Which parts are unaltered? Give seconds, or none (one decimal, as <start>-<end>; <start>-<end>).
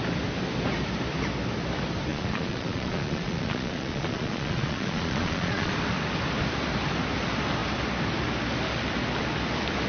0.0-2.1; 5.7-9.9